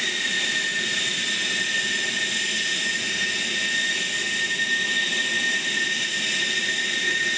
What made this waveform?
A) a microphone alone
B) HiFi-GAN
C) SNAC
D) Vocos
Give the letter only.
A